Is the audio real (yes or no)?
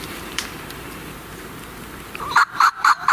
no